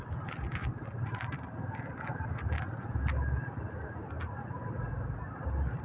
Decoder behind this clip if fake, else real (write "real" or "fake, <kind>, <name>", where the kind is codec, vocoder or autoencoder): real